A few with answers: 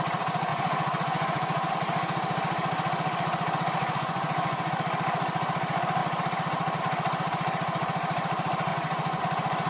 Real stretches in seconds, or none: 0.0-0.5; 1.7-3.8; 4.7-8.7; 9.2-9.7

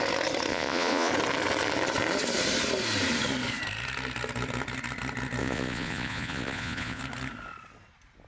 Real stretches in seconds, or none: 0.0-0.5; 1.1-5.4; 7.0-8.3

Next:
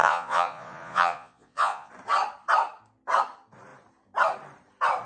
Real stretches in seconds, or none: 1.9-5.1

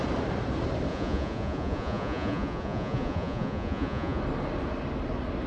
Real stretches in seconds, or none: 0.0-0.9; 4.2-5.5

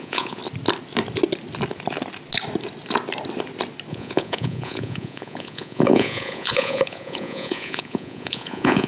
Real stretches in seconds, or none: 0.4-3.9

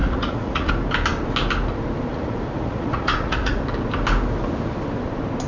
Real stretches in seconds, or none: 0.7-2.1; 3.6-5.5